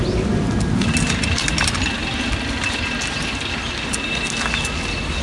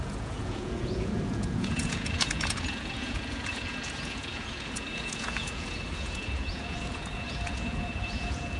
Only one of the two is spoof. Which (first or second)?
second